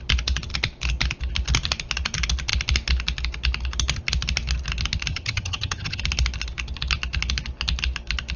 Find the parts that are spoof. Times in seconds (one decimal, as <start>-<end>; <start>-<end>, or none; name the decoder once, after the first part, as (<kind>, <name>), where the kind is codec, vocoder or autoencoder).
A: 5.1-6.0 (vocoder, HiFi-GAN)